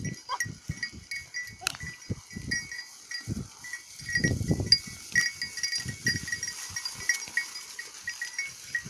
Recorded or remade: recorded